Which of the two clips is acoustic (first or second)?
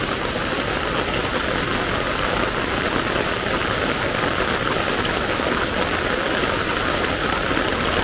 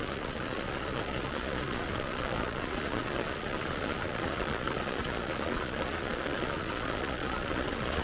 first